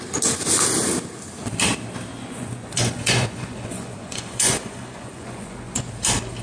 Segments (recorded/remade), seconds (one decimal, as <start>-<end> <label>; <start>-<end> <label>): 0.0-2.1 recorded; 2.1-5.9 remade; 5.9-6.4 recorded